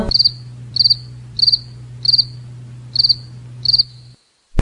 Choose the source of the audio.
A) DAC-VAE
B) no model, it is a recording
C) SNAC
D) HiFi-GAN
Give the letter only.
B